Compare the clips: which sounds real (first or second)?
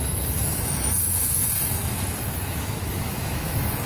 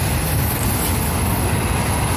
second